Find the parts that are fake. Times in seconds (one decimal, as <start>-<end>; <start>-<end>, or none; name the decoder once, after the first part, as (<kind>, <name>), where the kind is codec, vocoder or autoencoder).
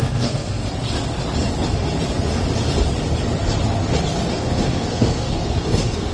0.0-0.6 (codec, SNAC); 4.3-6.1